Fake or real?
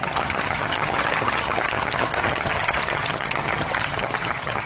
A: fake